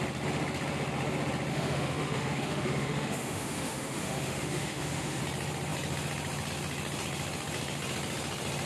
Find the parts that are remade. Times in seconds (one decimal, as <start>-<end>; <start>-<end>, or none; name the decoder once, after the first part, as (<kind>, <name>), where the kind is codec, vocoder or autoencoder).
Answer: 1.5-5.2 (autoencoder, DAC-VAE)